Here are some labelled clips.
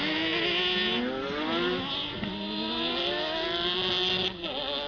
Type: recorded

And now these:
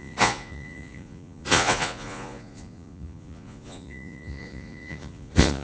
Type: remade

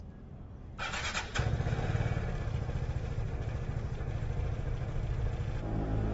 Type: recorded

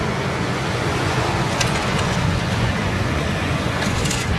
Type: remade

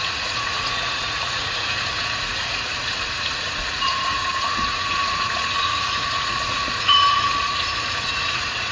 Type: remade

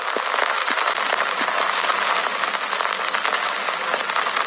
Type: recorded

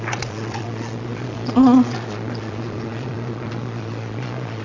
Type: remade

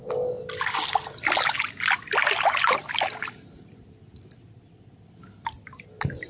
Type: recorded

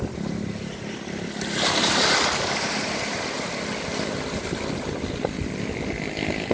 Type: recorded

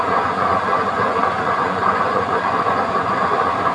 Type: remade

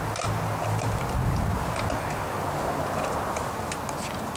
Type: recorded